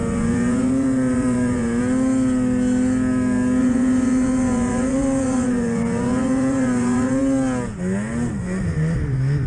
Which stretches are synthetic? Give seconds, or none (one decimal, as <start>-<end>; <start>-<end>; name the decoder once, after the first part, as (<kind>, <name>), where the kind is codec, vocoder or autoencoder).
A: 0.0-1.8 (vocoder, Vocos); 3.6-7.2